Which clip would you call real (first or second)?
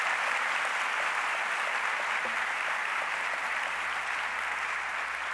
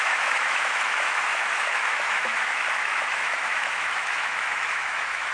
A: first